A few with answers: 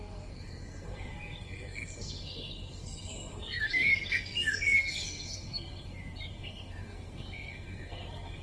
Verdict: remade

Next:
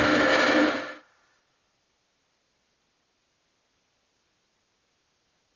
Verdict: recorded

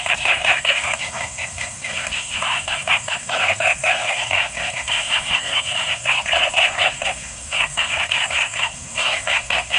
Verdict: remade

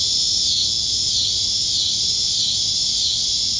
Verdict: recorded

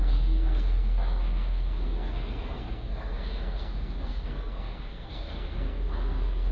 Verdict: remade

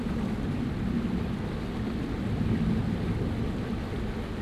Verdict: recorded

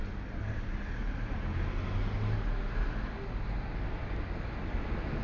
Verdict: recorded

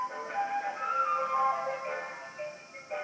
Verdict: recorded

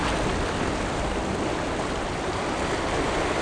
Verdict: recorded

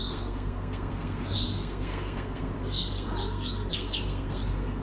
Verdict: remade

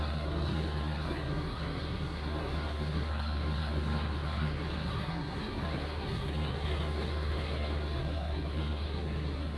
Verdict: remade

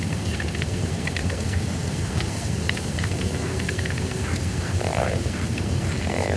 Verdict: remade